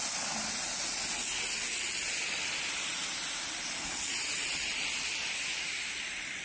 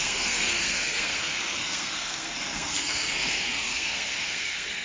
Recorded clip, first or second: first